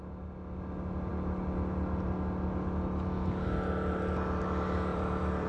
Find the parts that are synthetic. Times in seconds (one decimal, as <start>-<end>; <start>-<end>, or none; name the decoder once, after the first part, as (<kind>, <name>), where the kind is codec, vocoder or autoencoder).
4.9-5.5 (vocoder, BigVGAN v2)